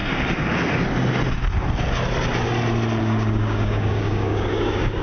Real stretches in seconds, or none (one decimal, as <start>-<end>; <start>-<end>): 0.0-3.0